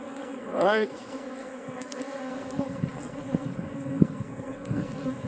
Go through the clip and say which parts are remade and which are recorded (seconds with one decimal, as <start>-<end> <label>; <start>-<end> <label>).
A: 0.0-5.3 remade